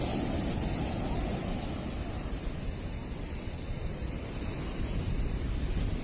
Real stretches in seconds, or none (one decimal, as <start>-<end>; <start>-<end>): 0.0-6.0